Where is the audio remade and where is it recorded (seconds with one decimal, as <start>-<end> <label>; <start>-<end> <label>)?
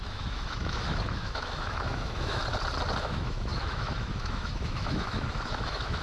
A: 0.0-2.4 remade; 2.4-3.0 recorded; 3.0-6.0 remade